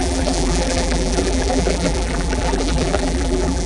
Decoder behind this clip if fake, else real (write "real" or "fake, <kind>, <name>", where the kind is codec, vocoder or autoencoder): fake, vocoder, BigVGAN v2